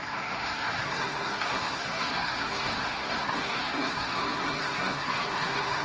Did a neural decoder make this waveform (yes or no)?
yes